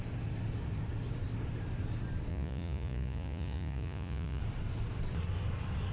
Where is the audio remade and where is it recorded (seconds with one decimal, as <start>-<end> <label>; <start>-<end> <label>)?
0.0-2.3 recorded; 2.3-4.4 remade; 4.4-5.9 recorded